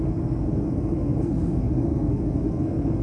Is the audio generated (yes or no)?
yes